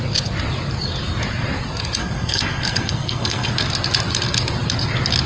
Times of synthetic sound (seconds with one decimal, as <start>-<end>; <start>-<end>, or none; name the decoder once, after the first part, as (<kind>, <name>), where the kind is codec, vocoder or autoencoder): 2.0-3.5 (codec, SNAC)